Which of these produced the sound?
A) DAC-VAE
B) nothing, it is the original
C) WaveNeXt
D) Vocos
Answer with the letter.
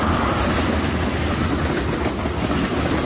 B